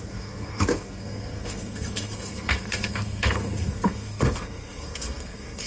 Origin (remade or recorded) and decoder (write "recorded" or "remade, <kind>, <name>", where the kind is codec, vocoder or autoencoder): remade, codec, SNAC